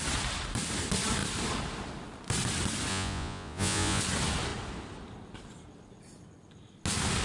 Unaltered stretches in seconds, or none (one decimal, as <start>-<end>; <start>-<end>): 0.0-2.9; 4.0-7.2